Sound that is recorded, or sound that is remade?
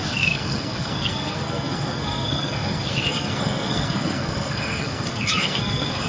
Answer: remade